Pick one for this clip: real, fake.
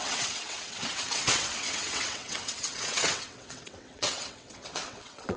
fake